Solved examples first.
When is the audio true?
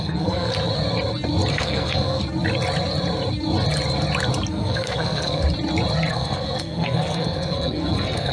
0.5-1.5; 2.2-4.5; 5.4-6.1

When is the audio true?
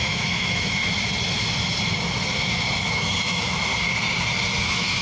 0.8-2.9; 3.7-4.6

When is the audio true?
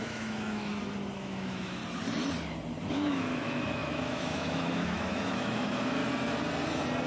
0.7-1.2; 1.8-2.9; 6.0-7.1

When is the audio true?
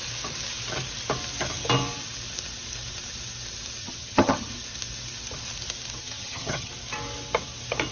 0.0-3.8; 4.5-6.0; 6.7-7.9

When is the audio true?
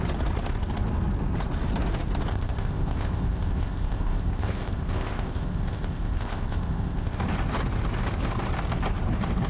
0.0-2.3; 7.2-9.5